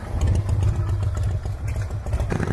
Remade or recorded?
recorded